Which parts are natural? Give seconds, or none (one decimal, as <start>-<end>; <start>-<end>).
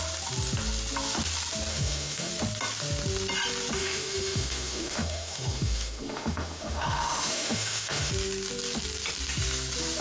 0.0-1.7; 2.3-3.8; 8.1-10.0